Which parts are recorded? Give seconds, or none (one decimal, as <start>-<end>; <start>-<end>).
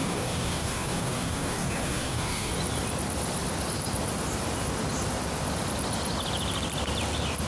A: 2.5-7.5